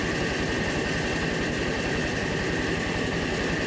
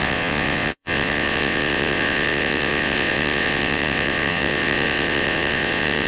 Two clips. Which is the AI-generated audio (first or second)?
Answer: second